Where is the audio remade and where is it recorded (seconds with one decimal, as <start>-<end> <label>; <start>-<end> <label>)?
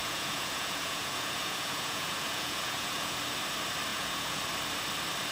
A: 0.0-3.2 remade; 3.2-3.9 recorded; 3.9-4.4 remade; 4.4-5.3 recorded